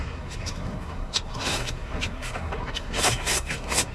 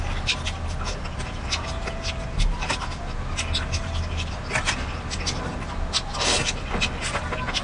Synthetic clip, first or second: first